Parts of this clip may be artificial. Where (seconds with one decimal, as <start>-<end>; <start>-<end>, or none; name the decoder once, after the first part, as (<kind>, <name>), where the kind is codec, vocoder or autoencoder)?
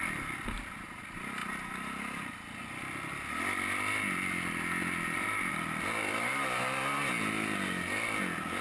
none